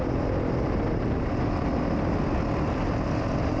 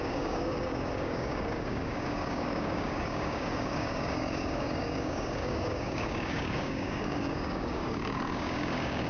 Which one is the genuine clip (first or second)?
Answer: first